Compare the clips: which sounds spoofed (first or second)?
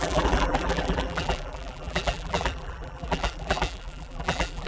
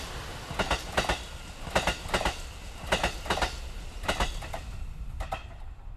first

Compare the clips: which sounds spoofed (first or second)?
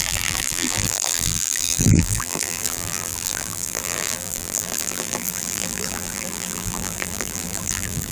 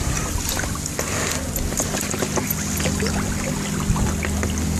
first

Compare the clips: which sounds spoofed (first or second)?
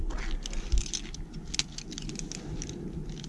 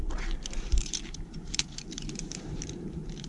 second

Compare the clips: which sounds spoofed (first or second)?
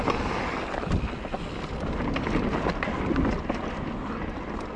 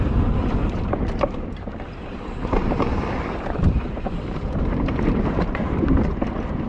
second